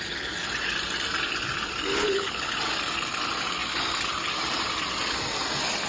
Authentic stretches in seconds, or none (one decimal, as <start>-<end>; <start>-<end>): 0.0-1.9; 2.5-5.9